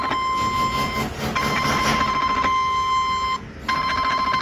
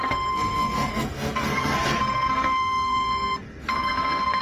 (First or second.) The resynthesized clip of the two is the second